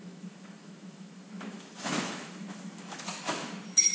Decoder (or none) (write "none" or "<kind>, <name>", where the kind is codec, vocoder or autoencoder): autoencoder, DAC-VAE